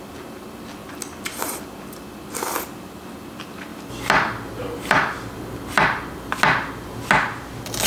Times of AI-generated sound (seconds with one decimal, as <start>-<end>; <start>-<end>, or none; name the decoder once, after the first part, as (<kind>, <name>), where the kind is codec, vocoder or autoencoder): none